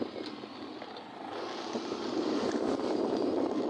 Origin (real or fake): real